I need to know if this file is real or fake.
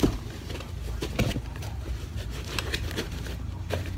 fake